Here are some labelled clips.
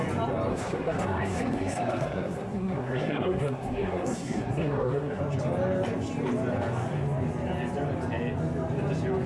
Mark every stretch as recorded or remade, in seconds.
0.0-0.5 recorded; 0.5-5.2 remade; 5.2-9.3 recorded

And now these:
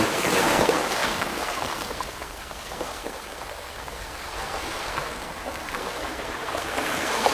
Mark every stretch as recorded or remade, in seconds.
0.0-7.3 remade